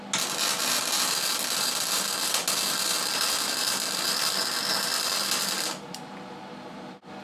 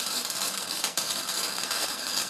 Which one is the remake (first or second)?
second